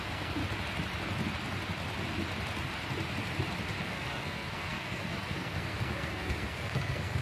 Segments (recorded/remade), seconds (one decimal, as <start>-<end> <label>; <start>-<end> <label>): 0.0-0.4 remade; 0.4-3.8 recorded; 3.8-7.2 remade